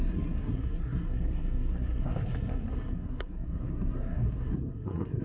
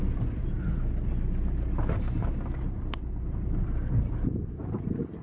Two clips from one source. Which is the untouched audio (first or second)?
second